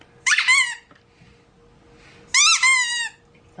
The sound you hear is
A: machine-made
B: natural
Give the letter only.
B